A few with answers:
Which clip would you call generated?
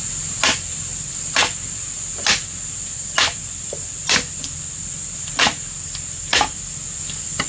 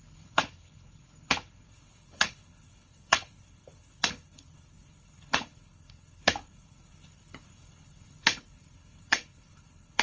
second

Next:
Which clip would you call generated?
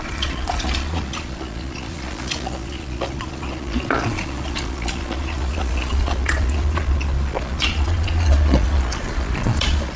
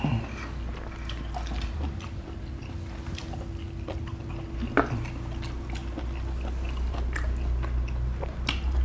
first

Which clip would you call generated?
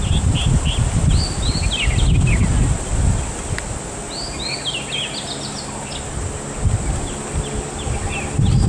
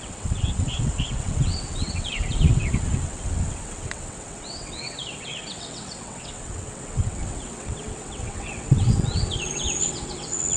second